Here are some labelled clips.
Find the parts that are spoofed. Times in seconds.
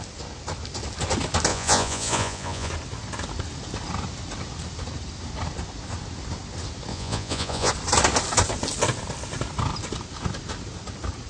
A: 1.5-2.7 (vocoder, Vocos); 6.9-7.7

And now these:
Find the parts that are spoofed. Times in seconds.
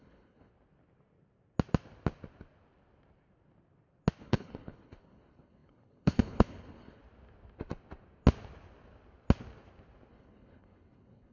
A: 0.0-0.5 (codec, HILCodec); 4.2-7.0; 10.1-11.3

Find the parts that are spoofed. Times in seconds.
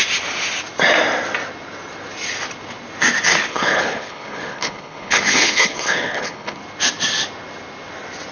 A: 3.5-6.6 (codec, HILCodec)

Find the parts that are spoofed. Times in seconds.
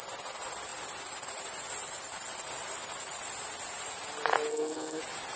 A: 4.5-5.0 (codec, SNAC)